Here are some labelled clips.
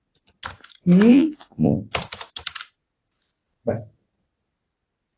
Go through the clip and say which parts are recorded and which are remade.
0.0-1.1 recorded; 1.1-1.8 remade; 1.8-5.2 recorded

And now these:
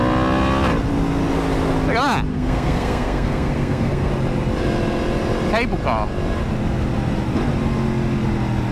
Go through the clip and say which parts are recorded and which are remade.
0.0-2.3 recorded; 2.3-4.1 remade; 4.1-8.7 recorded

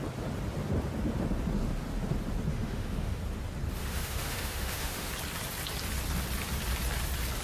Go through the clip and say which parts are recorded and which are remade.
0.0-2.5 recorded; 2.5-3.2 remade; 3.2-3.8 recorded; 3.8-5.1 remade; 5.1-7.4 recorded

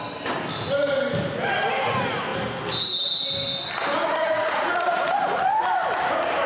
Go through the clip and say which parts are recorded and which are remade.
0.0-4.0 recorded; 4.0-5.6 remade; 5.6-6.5 recorded